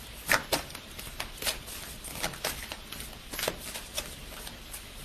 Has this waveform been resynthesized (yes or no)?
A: no